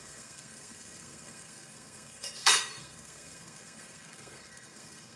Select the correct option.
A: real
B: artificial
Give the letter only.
B